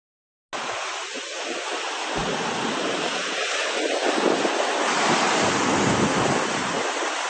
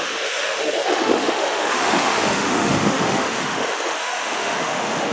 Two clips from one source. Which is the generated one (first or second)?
second